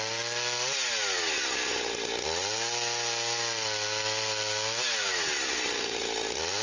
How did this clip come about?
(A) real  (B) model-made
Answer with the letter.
A